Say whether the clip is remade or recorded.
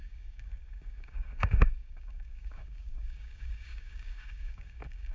remade